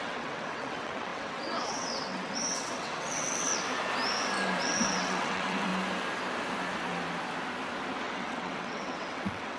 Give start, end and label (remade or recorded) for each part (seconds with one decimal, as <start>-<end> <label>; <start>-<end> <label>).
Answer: 0.0-3.5 remade; 3.5-4.6 recorded; 4.6-5.7 remade; 5.7-8.0 recorded; 8.0-9.6 remade